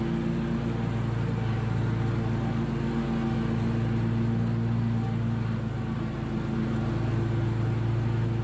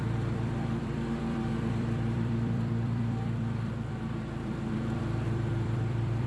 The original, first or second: first